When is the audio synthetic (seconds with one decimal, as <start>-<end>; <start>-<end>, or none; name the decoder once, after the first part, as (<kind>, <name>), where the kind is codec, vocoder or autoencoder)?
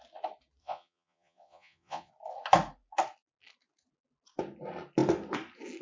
0.6-2.1 (vocoder, Vocos)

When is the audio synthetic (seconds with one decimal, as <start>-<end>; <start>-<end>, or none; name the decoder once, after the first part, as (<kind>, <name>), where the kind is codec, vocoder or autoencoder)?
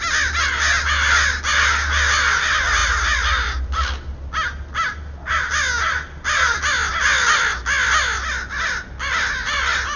none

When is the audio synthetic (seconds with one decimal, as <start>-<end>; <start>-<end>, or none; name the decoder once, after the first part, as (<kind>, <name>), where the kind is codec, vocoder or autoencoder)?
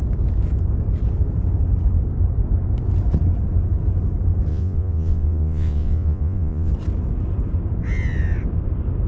4.5-6.7 (vocoder, Vocos)